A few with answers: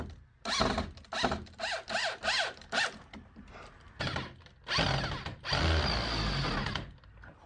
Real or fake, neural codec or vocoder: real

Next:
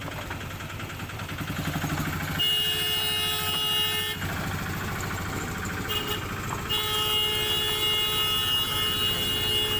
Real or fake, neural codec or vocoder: real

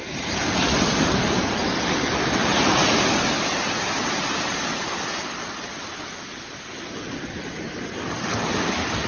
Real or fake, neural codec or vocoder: real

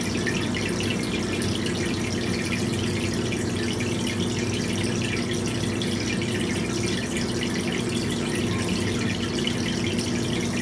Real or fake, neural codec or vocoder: real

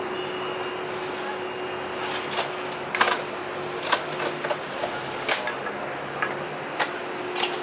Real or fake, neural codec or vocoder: real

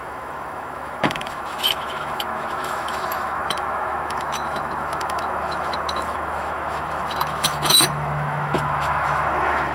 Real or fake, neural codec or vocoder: fake, autoencoder, DAC-VAE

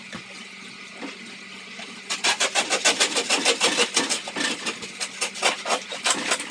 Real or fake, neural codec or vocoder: real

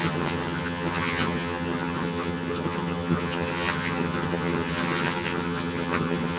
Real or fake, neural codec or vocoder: fake, vocoder, HiFi-GAN